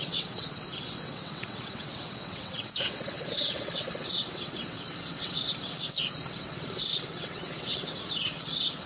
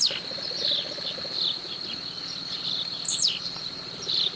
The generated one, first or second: first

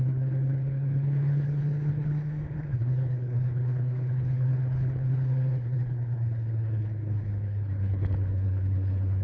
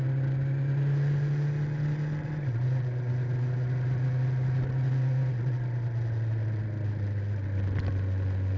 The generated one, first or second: first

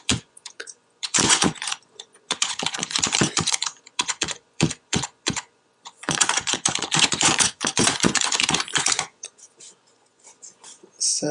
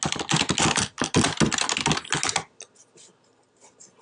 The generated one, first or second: first